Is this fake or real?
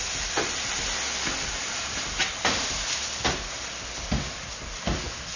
real